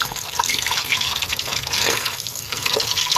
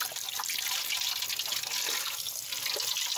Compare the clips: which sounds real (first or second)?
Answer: second